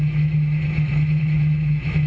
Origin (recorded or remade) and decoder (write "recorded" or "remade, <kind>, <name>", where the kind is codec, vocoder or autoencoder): remade, autoencoder, DAC-VAE